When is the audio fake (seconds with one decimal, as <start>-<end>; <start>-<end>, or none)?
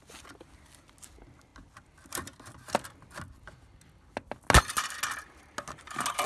none